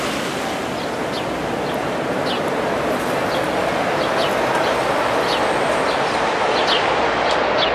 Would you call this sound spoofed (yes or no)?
no